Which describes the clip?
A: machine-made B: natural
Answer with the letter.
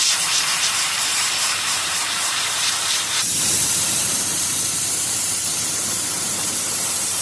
A